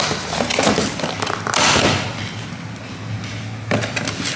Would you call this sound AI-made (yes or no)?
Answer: no